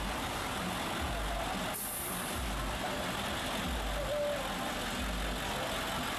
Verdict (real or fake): real